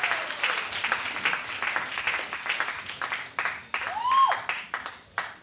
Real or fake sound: real